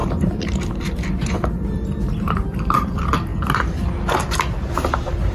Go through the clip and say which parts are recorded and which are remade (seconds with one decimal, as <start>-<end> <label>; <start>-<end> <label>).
0.0-3.3 remade; 3.3-4.7 recorded; 4.7-5.3 remade